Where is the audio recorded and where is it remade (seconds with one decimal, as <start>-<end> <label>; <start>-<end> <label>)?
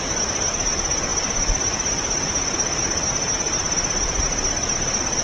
0.0-5.2 recorded